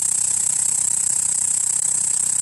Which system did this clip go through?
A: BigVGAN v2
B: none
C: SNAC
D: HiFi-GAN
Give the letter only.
A